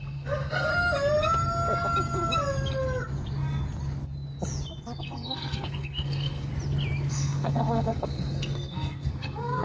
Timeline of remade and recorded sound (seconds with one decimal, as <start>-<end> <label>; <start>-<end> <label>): 0.0-0.7 remade; 0.7-5.0 recorded; 5.0-6.5 remade; 6.5-7.1 recorded; 7.1-9.6 remade